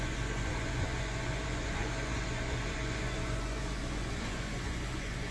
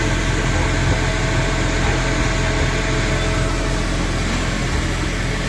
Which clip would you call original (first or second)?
second